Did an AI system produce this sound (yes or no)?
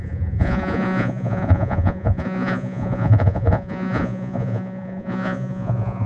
yes